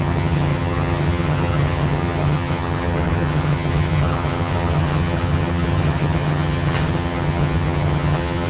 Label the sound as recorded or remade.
remade